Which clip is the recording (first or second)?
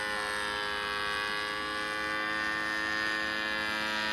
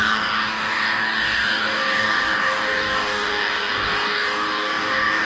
first